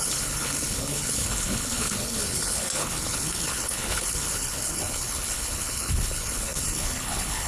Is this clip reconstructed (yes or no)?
yes